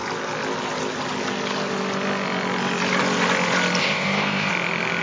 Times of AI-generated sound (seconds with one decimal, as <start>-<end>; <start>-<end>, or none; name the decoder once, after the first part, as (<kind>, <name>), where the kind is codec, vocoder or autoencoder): 3.8-4.5 (codec, ZipCodec)